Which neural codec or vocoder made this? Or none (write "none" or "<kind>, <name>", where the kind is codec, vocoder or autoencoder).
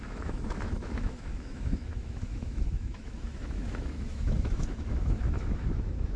autoencoder, DAC-VAE